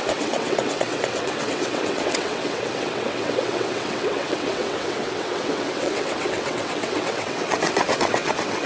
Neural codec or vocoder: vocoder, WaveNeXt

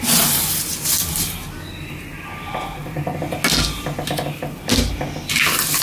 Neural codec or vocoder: none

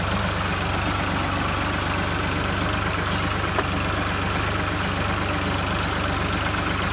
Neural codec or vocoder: none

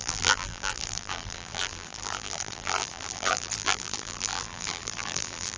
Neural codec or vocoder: vocoder, BigVGAN v2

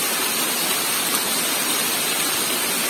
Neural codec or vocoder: none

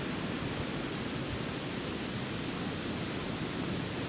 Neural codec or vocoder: none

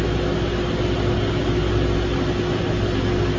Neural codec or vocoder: none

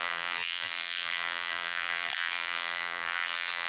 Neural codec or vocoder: vocoder, BigVGAN v2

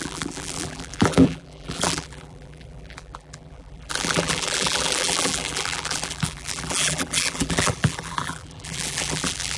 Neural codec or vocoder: vocoder, BigVGAN v2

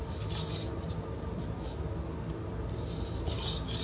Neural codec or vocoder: none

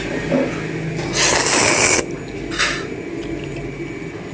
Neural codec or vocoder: none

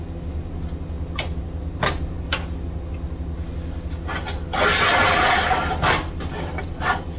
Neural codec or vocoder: none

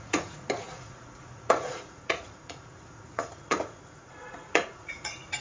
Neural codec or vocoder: vocoder, Vocos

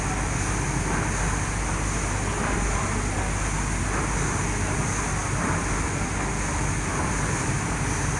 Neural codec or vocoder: none